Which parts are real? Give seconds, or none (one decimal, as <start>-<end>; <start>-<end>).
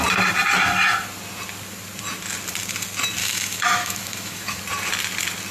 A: 0.0-3.2; 4.6-5.5